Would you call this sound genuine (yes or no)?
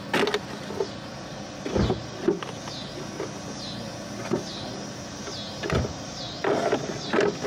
yes